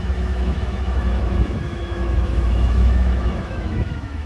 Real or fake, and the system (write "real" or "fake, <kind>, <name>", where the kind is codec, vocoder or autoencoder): fake, autoencoder, DAC-VAE